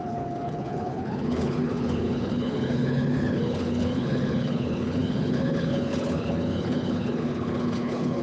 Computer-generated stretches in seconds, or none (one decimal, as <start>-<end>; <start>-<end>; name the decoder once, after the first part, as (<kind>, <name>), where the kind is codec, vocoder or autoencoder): 0.0-8.2 (codec, HILCodec)